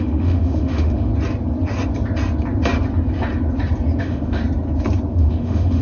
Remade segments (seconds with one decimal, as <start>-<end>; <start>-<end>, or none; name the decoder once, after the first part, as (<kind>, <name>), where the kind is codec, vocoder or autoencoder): 0.0-1.1 (autoencoder, DAC-VAE); 4.0-4.4; 5.1-5.8